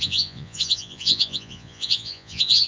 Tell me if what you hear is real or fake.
fake